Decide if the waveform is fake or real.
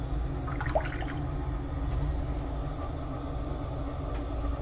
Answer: real